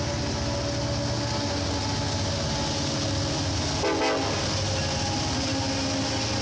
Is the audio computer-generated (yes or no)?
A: no